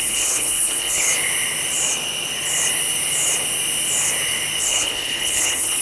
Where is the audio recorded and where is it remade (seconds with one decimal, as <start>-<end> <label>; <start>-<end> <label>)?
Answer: 0.0-1.1 remade; 1.1-4.6 recorded; 4.6-5.8 remade